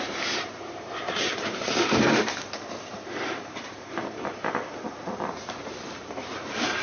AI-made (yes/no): yes